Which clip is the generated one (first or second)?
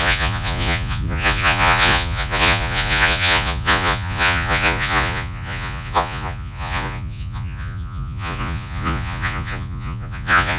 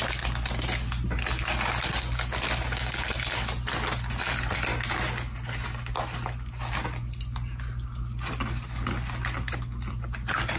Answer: first